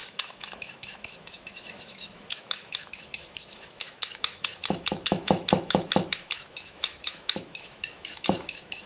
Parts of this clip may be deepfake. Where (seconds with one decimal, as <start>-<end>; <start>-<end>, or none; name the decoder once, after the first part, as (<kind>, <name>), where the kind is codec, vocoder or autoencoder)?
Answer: 0.0-8.9 (autoencoder, DAC-VAE)